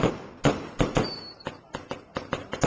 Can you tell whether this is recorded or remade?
recorded